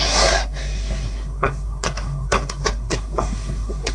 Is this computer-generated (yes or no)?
yes